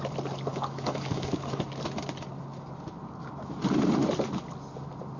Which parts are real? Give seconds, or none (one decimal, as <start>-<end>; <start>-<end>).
0.0-0.5; 1.6-5.2